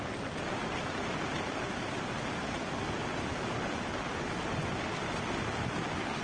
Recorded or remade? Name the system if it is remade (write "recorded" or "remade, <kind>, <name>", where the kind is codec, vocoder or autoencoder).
recorded